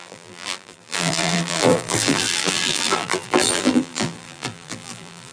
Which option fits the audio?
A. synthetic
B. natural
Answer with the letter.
A